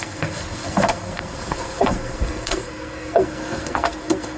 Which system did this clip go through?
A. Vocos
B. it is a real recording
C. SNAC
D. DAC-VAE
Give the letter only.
C